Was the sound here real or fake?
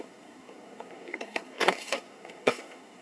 fake